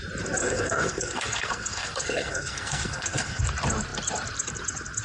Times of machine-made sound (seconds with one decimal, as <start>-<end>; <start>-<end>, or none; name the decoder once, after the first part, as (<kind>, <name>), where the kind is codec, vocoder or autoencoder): 0.4-3.4 (codec, SNAC)